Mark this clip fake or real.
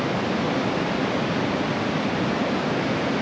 real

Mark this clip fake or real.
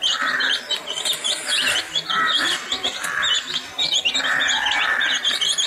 real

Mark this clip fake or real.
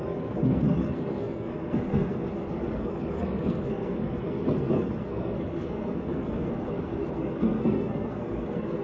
fake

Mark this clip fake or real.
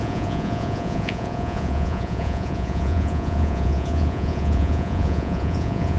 fake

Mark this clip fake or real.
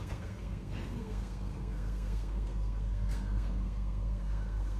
fake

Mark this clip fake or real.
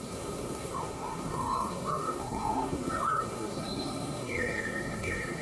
fake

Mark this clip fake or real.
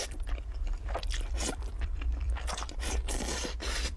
fake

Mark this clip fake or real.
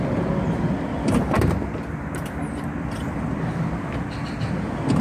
real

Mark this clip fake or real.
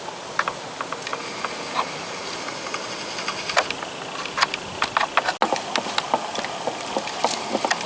real